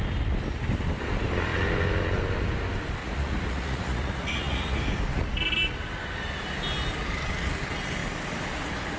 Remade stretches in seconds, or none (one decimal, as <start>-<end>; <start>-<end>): 3.0-4.8